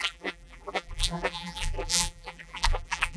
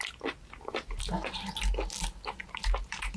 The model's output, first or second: first